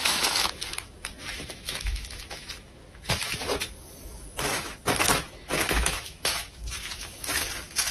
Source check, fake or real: fake